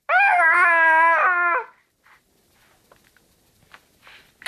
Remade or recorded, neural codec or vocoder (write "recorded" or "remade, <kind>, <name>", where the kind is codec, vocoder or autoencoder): recorded